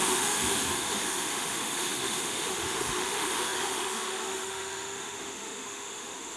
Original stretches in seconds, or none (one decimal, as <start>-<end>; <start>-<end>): none